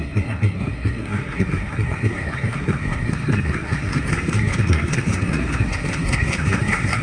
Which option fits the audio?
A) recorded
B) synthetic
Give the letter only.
B